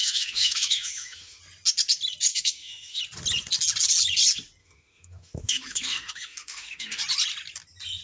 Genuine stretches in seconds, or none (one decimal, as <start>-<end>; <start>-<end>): 1.4-2.3; 3.0-4.6; 7.0-8.0